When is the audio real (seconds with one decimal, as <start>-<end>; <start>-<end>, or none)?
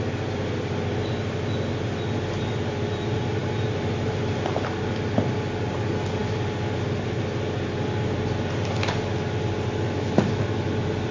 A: 0.0-11.1